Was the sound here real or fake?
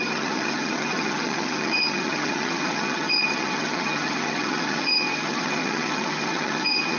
fake